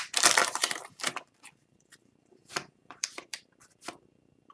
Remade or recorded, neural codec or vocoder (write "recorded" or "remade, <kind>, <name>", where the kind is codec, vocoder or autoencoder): remade, vocoder, BigVGAN v2